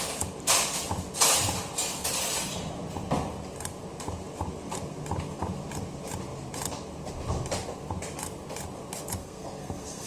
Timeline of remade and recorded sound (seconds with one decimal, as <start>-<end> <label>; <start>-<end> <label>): 0.0-9.2 recorded; 9.2-10.1 remade